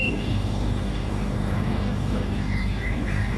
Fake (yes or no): yes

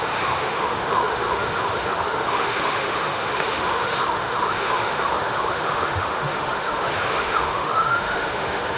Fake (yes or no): yes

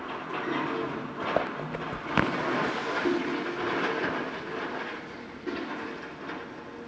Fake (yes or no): no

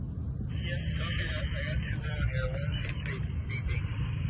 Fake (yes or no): no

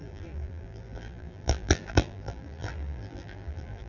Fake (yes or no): yes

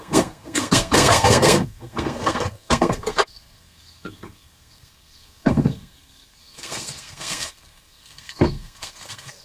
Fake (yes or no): yes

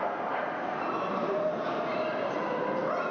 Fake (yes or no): no